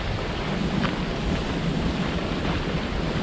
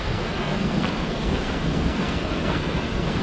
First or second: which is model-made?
second